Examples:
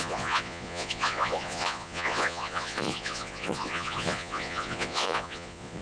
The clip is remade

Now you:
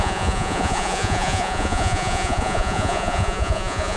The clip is remade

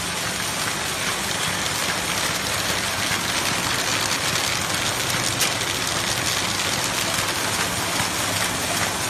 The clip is recorded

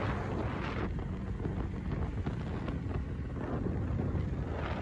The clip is recorded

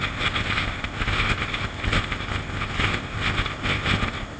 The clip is remade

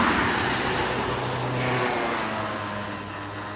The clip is recorded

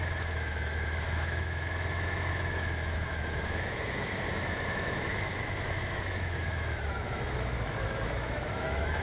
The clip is remade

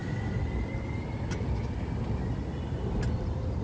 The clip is recorded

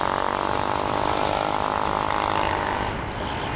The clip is recorded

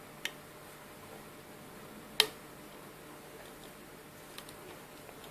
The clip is recorded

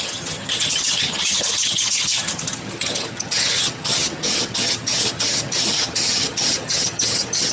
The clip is remade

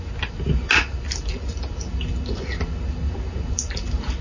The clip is recorded